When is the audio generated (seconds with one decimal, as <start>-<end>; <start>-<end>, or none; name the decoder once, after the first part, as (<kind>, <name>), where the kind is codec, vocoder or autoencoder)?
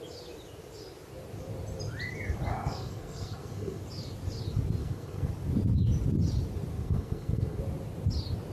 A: 2.5-3.8 (codec, SNAC); 4.8-5.3; 6.7-7.6